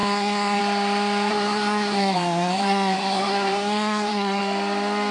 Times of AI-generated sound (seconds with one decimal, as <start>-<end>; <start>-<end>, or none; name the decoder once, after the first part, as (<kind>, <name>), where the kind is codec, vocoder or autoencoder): 0.0-0.6 (codec, SNAC); 1.3-4.4